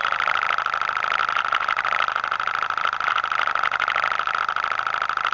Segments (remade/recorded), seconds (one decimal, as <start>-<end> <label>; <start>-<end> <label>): 0.0-5.3 recorded